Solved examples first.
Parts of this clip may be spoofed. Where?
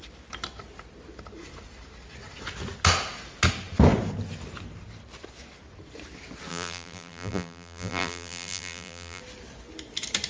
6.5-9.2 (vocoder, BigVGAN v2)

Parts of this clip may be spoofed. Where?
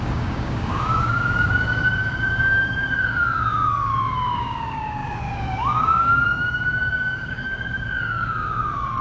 0.0-9.0 (codec, DAC)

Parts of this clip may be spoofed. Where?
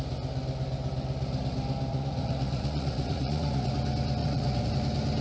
1.9-3.7 (vocoder, Vocos); 4.2-4.7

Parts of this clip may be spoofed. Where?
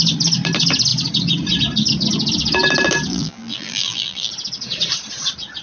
3.1-4.3 (vocoder, BigVGAN v2)